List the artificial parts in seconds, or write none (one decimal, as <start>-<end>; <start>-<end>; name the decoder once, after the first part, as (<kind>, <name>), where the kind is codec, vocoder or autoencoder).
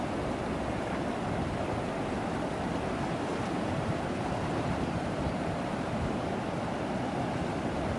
3.3-6.6 (vocoder, BigVGAN v2)